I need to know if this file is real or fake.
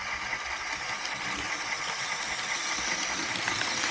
real